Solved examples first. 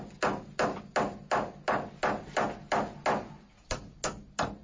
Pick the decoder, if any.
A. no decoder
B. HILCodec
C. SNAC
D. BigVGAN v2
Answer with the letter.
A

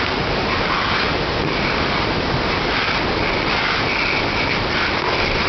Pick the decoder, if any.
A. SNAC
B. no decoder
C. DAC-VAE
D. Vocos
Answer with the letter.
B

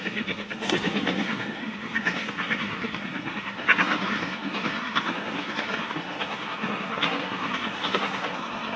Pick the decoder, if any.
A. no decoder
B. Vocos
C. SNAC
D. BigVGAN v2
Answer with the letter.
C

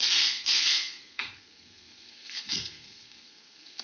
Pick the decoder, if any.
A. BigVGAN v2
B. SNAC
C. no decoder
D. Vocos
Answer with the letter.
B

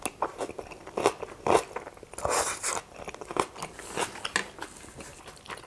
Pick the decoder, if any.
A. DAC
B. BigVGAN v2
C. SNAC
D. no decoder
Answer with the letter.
D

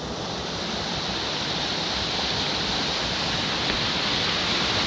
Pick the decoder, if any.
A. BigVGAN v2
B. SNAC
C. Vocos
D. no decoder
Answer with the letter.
D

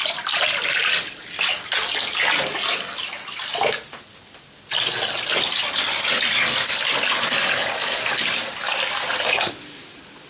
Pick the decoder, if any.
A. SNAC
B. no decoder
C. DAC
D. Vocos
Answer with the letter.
B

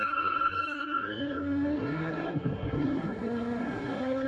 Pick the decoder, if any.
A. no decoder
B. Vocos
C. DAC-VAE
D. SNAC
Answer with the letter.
D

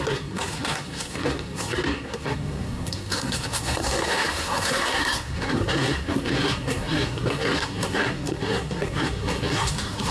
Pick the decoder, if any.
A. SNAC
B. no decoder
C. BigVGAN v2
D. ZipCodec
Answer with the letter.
A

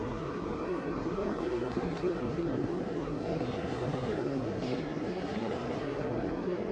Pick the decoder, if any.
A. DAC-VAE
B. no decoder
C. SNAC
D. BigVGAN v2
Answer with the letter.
C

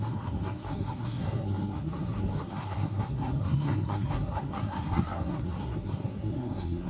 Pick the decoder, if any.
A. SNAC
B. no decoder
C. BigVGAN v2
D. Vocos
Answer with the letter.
A